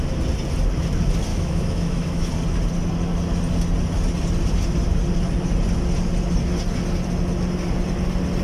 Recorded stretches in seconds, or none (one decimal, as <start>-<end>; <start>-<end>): 0.0-1.3; 2.3-8.4